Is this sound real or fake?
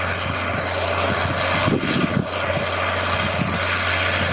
real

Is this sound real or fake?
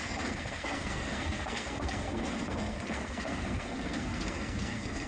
fake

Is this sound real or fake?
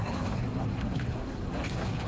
fake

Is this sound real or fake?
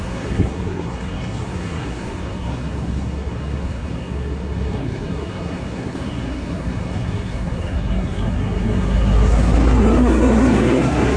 fake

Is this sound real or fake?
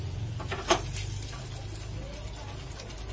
real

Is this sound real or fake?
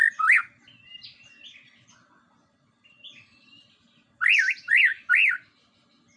real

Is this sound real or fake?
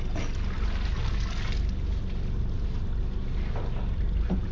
real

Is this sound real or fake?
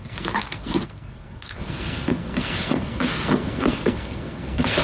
fake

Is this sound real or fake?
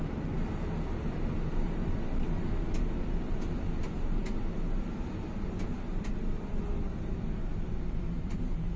real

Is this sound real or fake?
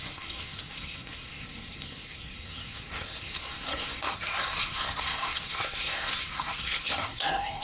fake